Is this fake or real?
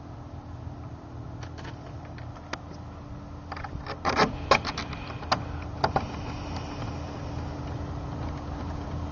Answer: real